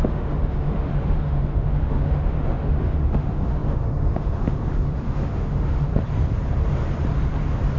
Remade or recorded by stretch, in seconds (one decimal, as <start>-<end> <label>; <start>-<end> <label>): 0.0-5.9 remade; 5.9-7.8 recorded